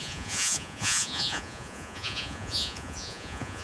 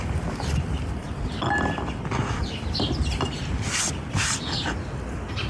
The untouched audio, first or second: second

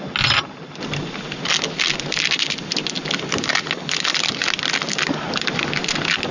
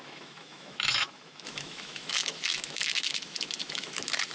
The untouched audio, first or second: first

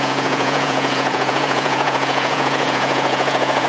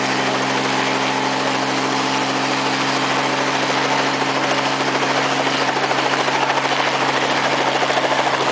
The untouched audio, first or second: second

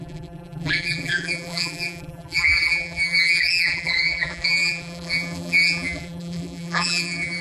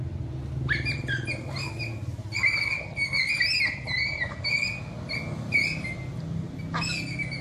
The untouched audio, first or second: second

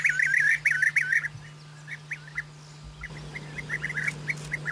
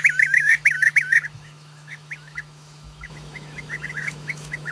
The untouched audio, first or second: first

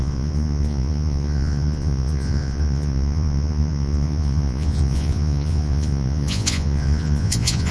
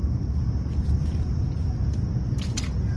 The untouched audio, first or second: second